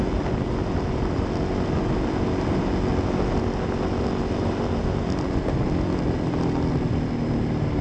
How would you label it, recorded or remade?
recorded